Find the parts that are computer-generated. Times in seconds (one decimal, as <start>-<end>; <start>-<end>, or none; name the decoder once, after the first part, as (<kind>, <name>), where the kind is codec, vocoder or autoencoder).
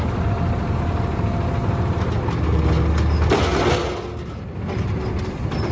none